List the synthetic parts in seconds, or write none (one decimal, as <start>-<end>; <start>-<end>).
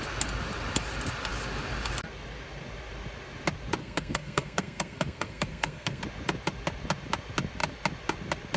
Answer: 3.8-6.0